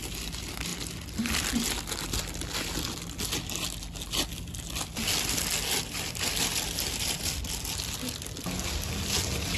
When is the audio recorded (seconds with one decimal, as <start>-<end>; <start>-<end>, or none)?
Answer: 0.0-9.6